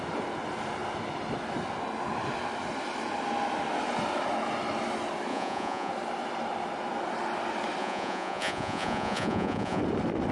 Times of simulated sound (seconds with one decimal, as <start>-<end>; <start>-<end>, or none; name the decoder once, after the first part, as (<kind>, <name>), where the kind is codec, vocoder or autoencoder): 5.3-5.9 (vocoder, Vocos); 7.8-9.8